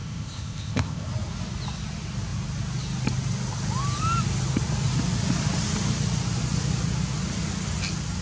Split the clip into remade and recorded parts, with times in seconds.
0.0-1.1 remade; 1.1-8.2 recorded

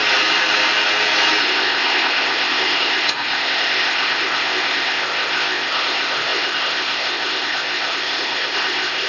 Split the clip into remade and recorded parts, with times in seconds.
0.0-1.4 recorded; 1.4-9.1 remade

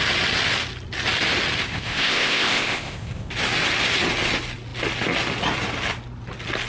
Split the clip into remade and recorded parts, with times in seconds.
0.0-1.7 recorded; 1.7-3.3 remade; 3.3-6.7 recorded

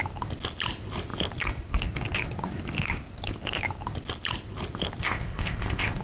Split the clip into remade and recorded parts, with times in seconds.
0.0-5.0 recorded; 5.0-6.0 remade

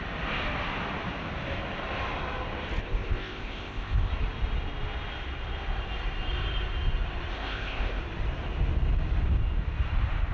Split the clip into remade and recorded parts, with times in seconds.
0.0-2.8 recorded; 2.8-4.1 remade; 4.1-7.3 recorded; 7.3-8.0 remade; 8.0-10.3 recorded